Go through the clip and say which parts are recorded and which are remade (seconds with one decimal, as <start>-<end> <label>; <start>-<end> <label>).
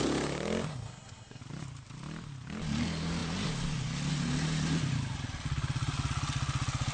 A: 0.0-0.7 recorded; 0.7-1.4 remade; 1.4-6.9 recorded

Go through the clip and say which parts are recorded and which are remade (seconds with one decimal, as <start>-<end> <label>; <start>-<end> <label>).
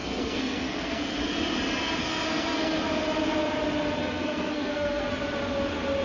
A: 0.0-1.2 remade; 1.2-2.0 recorded; 2.0-2.8 remade; 2.8-4.0 recorded; 4.0-5.1 remade; 5.1-6.0 recorded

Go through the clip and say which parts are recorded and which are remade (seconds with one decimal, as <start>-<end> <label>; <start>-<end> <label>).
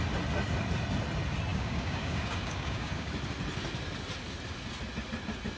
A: 0.0-1.5 recorded; 1.5-3.1 remade; 3.1-5.6 recorded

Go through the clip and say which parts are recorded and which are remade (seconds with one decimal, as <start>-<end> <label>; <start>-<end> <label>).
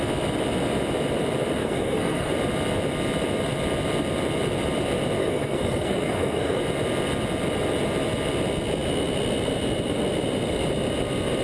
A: 0.0-1.6 recorded; 1.6-2.3 remade; 2.3-5.2 recorded; 5.2-6.6 remade; 6.6-11.4 recorded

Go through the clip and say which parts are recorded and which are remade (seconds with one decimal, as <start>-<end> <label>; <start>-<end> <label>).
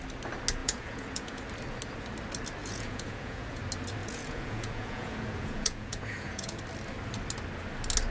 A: 0.0-0.6 recorded; 0.6-1.4 remade; 1.4-2.6 recorded; 2.6-3.6 remade; 3.6-4.0 recorded; 4.0-6.6 remade; 6.6-8.1 recorded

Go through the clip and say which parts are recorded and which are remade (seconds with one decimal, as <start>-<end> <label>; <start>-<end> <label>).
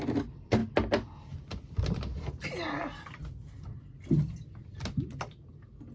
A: 0.0-5.9 recorded